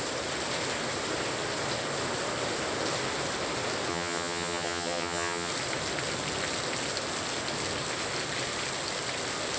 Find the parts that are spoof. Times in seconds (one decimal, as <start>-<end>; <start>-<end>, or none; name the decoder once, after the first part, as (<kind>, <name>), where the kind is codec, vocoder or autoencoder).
3.9-5.5 (vocoder, HiFi-GAN)